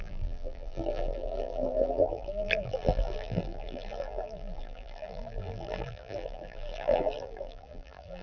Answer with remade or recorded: remade